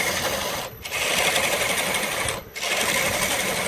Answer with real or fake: real